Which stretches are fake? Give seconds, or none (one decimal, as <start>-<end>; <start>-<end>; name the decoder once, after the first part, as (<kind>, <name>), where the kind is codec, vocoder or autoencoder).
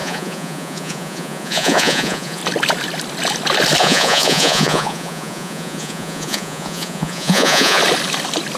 0.0-2.4 (vocoder, Vocos); 3.8-7.8